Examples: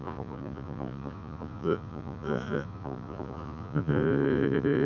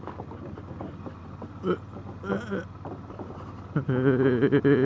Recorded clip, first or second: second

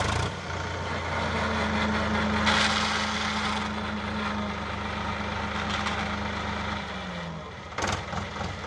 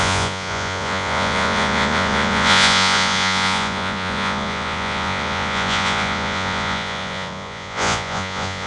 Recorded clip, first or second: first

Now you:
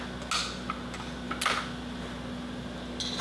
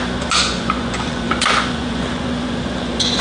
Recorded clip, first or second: first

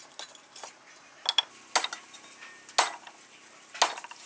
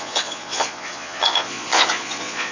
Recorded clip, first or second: first